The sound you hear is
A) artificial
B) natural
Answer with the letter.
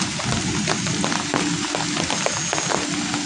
B